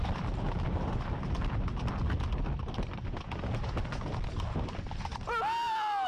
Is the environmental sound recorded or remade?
recorded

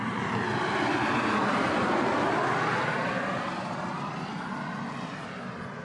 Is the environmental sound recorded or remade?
recorded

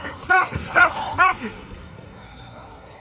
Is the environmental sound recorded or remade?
remade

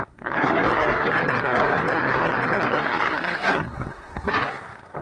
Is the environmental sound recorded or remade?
remade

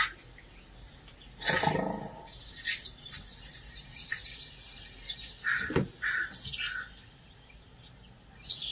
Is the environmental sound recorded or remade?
recorded